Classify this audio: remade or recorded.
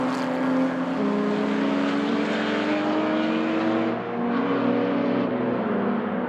recorded